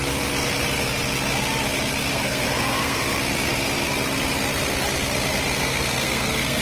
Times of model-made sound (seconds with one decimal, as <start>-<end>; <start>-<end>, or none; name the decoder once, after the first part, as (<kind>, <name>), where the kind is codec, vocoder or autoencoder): 2.1-3.0 (codec, SNAC); 5.5-6.6